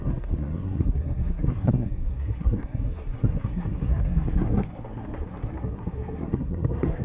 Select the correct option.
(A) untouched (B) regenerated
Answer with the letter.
B